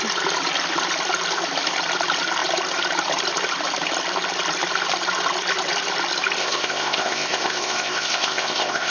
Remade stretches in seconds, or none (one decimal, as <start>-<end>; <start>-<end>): 6.4-8.9